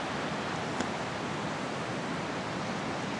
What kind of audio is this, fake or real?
real